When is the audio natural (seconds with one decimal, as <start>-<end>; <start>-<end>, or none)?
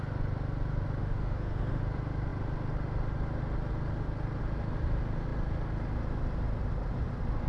0.0-1.0; 1.8-7.5